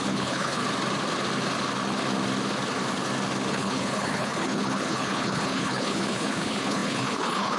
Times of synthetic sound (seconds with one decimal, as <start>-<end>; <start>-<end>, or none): 0.0-0.6; 3.5-7.6